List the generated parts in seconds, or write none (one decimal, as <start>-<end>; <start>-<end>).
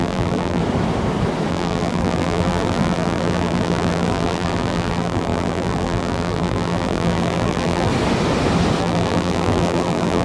0.0-0.6; 1.5-7.9; 8.8-10.2